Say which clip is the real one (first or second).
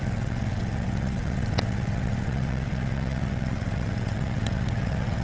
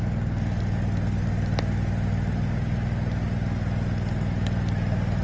second